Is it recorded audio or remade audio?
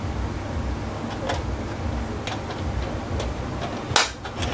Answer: recorded